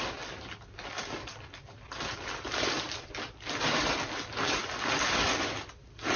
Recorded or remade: recorded